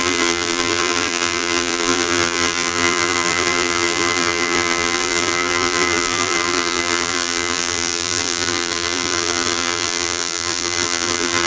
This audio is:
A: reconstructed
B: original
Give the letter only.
A